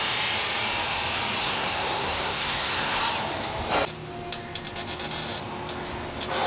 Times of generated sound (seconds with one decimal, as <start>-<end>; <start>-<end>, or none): 1.4-3.0